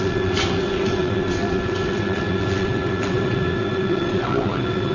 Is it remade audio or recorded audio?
remade